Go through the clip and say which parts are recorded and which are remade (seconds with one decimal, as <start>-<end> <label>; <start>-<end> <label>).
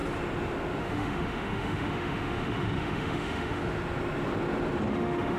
0.0-0.8 recorded; 0.8-3.6 remade; 3.6-4.9 recorded; 4.9-5.4 remade